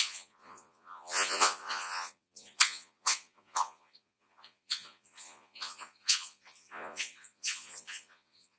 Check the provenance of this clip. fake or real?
fake